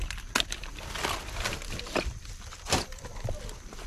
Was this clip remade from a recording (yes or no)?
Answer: no